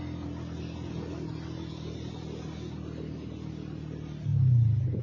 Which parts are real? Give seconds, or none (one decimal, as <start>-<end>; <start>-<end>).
0.0-5.0